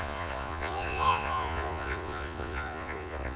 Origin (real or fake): fake